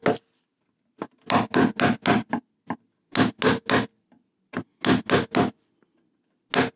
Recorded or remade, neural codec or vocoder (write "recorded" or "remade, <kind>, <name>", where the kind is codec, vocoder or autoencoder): recorded